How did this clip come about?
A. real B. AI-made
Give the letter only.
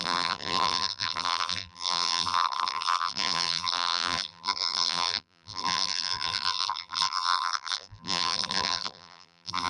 B